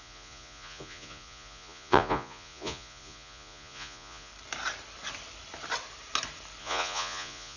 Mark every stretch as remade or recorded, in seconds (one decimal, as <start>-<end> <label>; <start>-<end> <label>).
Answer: 0.0-4.3 remade; 4.3-6.6 recorded; 6.6-7.6 remade